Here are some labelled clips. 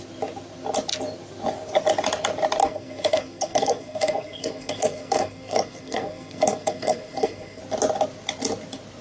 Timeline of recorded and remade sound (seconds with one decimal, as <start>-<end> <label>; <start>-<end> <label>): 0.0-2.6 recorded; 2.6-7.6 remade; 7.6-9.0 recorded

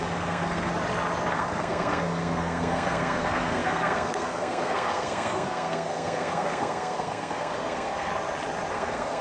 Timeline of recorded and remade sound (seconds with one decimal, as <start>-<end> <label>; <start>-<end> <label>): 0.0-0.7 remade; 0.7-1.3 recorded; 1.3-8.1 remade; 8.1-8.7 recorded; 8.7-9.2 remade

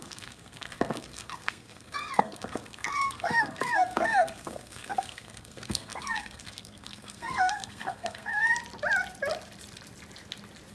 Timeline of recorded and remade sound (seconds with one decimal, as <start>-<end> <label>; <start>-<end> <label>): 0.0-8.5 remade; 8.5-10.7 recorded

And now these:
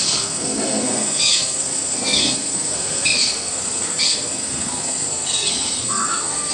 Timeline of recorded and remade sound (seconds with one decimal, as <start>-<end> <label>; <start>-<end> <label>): 0.0-6.5 remade